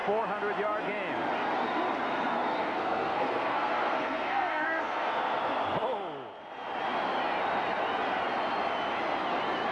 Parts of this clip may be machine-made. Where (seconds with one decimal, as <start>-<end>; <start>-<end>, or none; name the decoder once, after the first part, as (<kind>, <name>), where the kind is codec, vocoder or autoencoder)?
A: 2.6-5.4 (codec, SNAC)